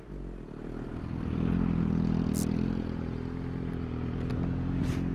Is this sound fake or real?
real